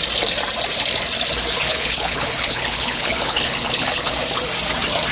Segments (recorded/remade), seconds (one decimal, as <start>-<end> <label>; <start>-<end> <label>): 0.0-1.7 recorded; 1.7-4.1 remade; 4.1-5.1 recorded